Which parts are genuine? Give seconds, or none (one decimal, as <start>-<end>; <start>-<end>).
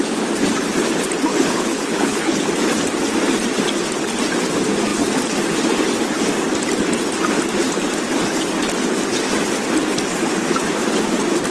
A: 0.0-1.3; 2.5-11.5